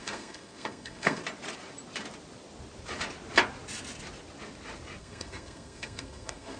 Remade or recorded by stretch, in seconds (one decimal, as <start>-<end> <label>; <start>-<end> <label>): 0.0-1.2 remade; 1.2-5.0 recorded; 5.0-6.6 remade